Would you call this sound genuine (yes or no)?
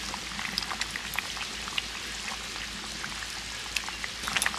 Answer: yes